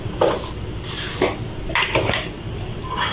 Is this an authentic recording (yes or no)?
yes